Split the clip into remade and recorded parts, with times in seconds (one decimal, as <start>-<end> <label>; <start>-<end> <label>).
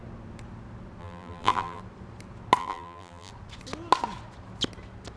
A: 0.0-1.0 recorded; 1.0-1.8 remade; 1.8-2.6 recorded; 2.6-3.3 remade; 3.3-5.2 recorded